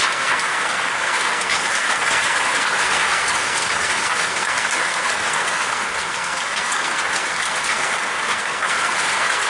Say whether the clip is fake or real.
fake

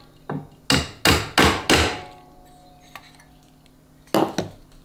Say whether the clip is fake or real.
real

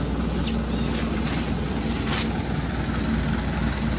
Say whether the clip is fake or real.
real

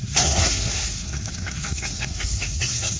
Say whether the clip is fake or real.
fake